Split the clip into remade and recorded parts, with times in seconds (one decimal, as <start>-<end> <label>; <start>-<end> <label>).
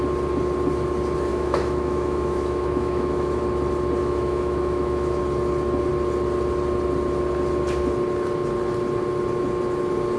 0.0-1.3 recorded; 1.3-3.4 remade; 3.4-4.0 recorded; 4.0-5.2 remade; 5.2-10.2 recorded